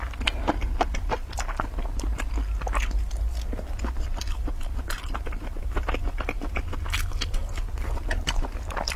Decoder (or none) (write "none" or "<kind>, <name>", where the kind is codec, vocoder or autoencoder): none